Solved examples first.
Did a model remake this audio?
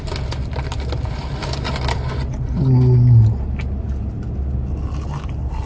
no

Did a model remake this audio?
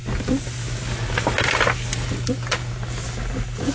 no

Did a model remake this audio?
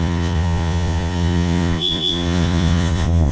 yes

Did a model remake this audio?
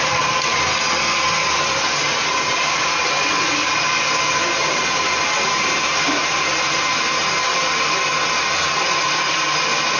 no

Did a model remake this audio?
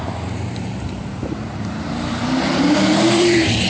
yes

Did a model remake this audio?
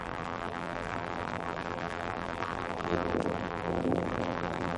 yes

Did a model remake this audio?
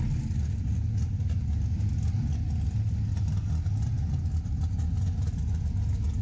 no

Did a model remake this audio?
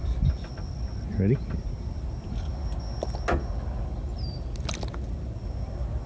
no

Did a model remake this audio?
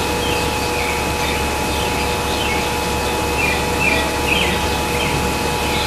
no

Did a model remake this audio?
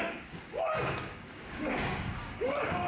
yes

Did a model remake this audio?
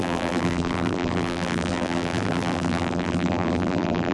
yes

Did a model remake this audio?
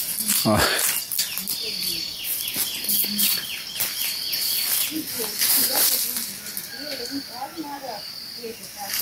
no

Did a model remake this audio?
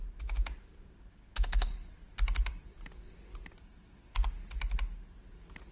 no